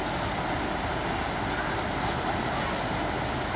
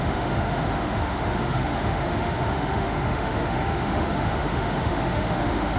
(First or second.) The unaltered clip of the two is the first